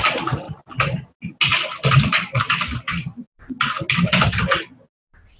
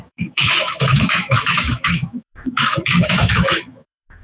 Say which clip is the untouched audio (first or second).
first